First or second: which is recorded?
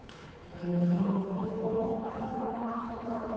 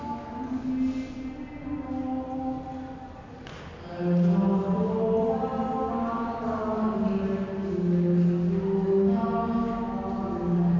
second